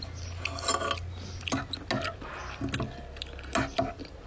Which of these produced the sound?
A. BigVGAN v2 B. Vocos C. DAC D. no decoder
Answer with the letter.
D